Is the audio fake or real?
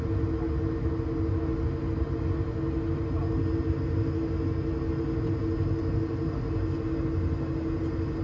real